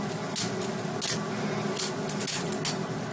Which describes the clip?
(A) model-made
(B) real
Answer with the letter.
B